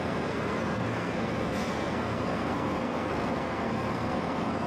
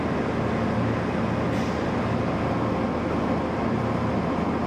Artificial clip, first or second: first